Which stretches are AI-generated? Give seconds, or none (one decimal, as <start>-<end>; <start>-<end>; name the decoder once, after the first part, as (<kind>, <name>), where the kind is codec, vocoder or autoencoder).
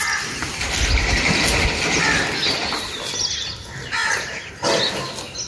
4.0-4.5 (vocoder, BigVGAN v2)